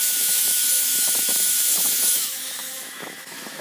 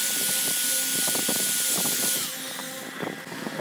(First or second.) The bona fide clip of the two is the second